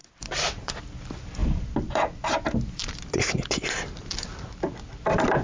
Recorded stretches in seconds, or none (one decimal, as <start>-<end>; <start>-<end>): 0.8-1.4; 2.9-5.4